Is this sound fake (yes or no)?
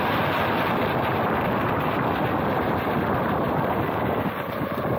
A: no